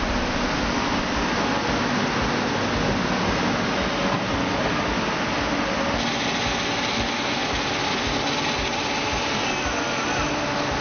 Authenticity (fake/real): real